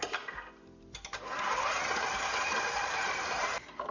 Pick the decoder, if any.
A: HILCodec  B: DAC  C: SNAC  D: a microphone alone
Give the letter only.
D